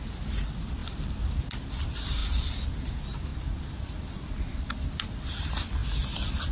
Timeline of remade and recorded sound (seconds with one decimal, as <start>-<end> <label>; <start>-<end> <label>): 0.0-0.8 recorded; 0.8-1.4 remade; 1.4-3.3 recorded; 3.3-4.7 remade; 4.7-6.5 recorded